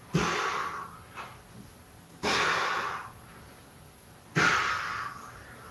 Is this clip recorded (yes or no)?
yes